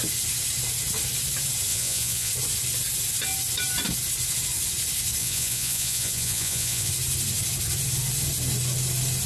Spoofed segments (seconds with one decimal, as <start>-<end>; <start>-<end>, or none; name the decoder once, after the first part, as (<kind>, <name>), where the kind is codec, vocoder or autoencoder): 1.7-2.3 (vocoder, Vocos); 5.2-6.9